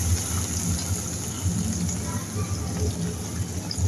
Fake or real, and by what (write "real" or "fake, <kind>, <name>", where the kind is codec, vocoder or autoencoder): real